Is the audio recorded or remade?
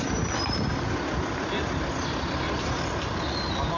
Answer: recorded